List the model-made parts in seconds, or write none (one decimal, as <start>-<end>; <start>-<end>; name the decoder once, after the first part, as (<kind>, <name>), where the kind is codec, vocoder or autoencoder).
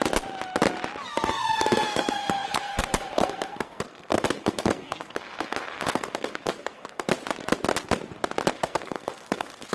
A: 1.1-7.1 (codec, SNAC); 8.5-9.7